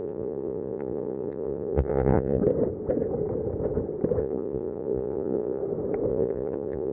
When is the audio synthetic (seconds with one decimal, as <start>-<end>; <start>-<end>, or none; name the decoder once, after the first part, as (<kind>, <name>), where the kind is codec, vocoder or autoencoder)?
0.0-2.4 (vocoder, Vocos); 4.2-5.6; 6.1-6.9